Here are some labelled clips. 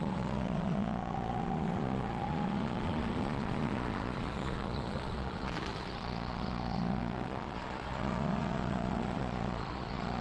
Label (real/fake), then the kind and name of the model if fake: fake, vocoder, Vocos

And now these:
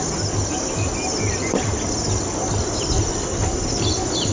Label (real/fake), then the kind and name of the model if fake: real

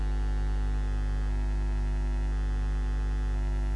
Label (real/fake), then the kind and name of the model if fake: real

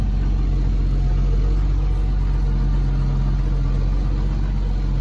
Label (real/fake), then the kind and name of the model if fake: real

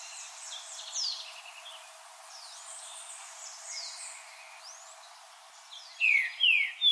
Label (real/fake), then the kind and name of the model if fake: real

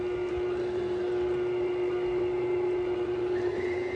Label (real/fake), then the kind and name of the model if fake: real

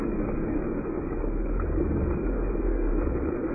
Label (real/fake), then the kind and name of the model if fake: fake, codec, DAC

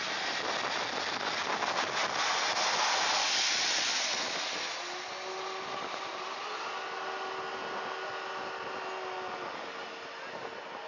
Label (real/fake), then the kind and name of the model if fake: real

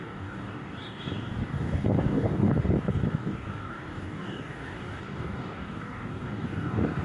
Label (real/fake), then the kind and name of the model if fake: fake, codec, DAC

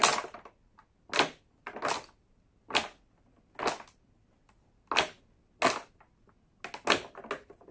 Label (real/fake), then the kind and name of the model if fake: real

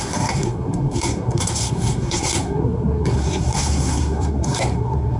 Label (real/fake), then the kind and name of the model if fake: fake, codec, SNAC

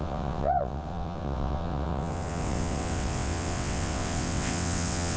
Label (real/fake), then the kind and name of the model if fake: fake, vocoder, WaveNeXt